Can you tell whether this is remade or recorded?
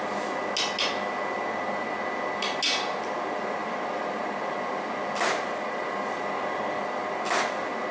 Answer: recorded